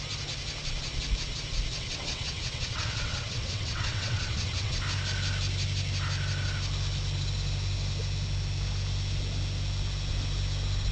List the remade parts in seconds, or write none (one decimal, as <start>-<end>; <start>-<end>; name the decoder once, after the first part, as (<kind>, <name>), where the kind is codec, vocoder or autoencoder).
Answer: 1.7-4.8 (vocoder, WaveNeXt)